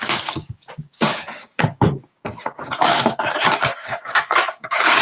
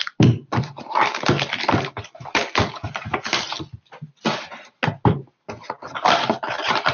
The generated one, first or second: first